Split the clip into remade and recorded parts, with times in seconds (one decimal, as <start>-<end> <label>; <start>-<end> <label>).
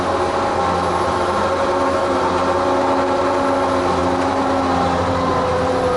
0.0-6.0 recorded